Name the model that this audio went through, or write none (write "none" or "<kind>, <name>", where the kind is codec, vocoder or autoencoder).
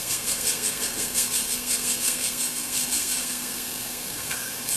codec, SNAC